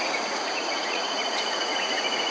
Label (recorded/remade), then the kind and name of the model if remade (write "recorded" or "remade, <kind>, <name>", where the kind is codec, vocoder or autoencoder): remade, vocoder, Vocos